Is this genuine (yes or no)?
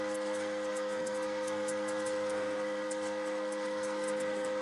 no